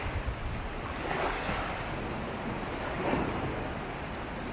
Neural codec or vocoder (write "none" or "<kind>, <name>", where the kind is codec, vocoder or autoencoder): none